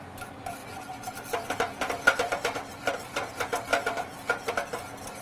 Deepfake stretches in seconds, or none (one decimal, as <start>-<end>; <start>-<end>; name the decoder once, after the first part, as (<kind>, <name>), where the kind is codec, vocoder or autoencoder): 0.6-3.3 (vocoder, BigVGAN v2); 3.7-4.5